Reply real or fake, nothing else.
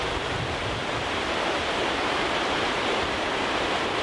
real